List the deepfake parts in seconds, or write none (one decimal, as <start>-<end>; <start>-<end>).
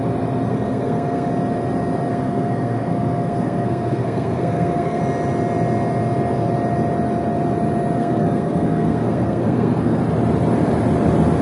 0.5-1.3; 2.1-5.0; 8.0-10.0